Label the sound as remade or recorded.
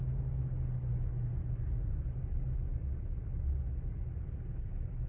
recorded